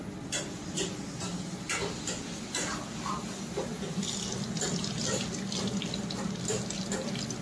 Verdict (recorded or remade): recorded